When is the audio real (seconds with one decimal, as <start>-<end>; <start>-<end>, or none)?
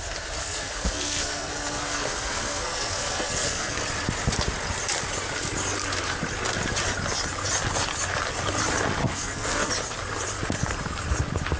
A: 0.0-0.4; 3.8-9.0; 9.7-11.6